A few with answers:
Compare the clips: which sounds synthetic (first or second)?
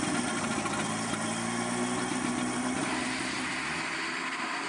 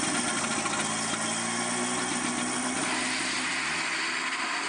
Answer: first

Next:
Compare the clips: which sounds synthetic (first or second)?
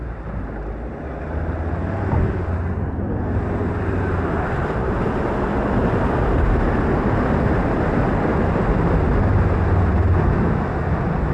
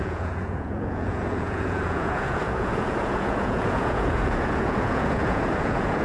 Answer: second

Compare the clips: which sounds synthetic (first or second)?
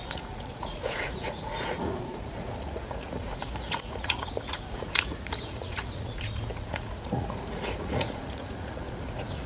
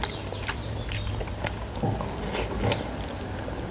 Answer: first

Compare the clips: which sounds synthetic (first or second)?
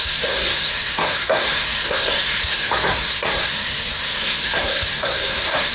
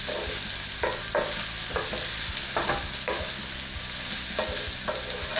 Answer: first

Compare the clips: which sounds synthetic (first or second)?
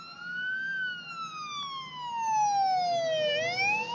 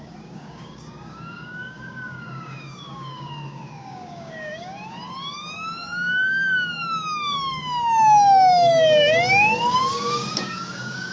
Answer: second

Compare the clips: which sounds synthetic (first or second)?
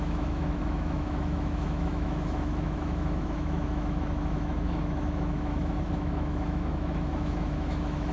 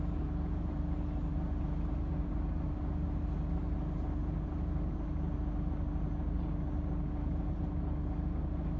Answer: first